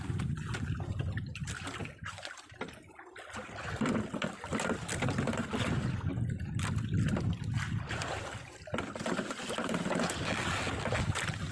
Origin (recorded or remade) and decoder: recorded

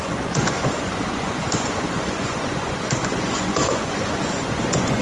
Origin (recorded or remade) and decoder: remade, vocoder, Vocos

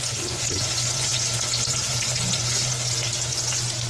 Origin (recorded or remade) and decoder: remade, vocoder, Vocos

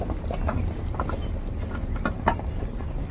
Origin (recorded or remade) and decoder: recorded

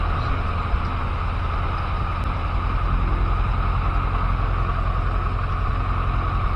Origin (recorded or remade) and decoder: recorded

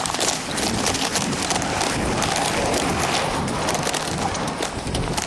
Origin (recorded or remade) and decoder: recorded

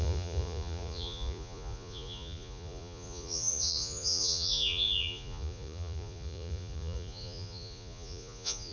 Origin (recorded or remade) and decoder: remade, vocoder, Vocos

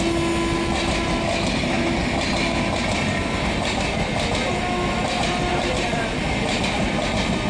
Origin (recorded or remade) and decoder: recorded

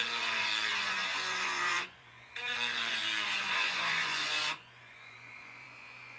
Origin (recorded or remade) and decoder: remade, vocoder, Vocos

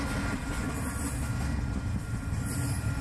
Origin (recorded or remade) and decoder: recorded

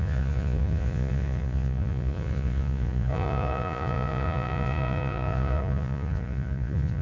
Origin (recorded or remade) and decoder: remade, vocoder, Vocos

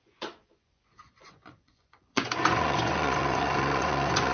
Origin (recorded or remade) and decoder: remade, vocoder, Vocos